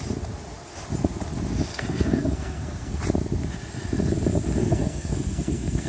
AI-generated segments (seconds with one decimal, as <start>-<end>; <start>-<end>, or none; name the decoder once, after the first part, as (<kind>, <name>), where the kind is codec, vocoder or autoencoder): 1.7-3.0 (codec, SNAC); 4.6-5.9